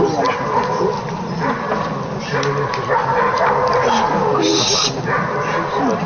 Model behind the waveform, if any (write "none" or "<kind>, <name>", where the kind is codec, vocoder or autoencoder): none